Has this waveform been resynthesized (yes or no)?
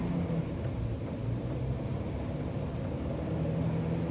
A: no